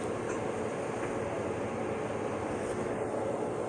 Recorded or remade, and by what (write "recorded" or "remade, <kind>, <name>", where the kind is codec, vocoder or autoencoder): recorded